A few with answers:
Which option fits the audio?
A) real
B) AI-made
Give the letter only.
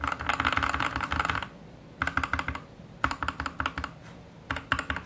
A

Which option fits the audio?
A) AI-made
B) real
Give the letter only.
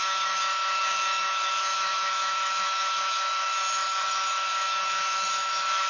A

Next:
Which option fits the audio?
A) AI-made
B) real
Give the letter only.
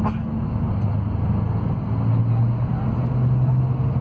B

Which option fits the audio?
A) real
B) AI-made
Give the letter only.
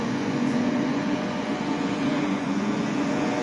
B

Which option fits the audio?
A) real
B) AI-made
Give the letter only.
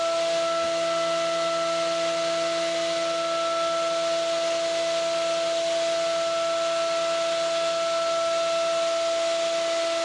A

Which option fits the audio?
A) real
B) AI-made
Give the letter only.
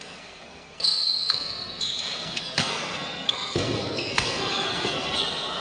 B